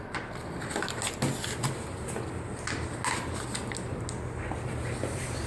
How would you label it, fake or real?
real